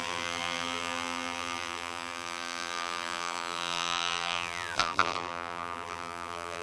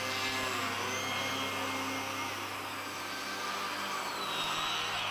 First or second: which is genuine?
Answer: second